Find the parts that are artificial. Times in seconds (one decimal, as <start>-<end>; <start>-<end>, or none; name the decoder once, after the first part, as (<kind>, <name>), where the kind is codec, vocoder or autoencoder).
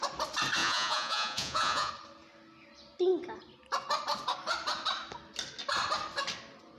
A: 0.6-1.9 (vocoder, Vocos)